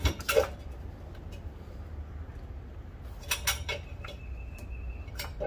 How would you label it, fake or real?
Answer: real